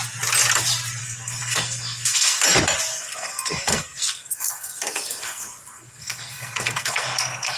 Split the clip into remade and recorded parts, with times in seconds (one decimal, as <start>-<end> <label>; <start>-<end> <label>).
0.0-1.0 recorded; 1.0-2.4 remade; 2.4-2.9 recorded; 2.9-7.6 remade